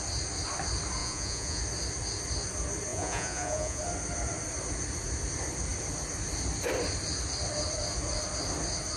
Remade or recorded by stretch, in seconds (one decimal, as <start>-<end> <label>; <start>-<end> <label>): 0.0-1.0 recorded; 1.0-1.6 remade; 1.6-2.9 recorded; 2.9-3.8 remade; 3.8-9.0 recorded